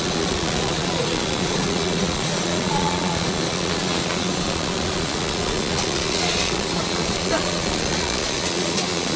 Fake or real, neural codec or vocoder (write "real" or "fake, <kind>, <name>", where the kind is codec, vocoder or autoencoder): fake, vocoder, Vocos